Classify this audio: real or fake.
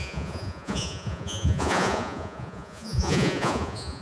fake